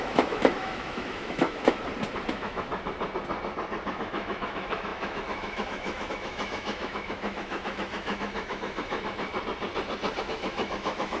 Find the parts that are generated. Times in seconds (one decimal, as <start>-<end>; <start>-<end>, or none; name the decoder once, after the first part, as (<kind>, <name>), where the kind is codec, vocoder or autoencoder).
0.0-1.8 (autoencoder, DAC-VAE); 2.3-2.7; 3.9-9.3; 10.2-11.2